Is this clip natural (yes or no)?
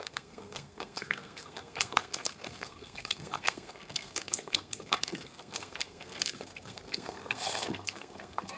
no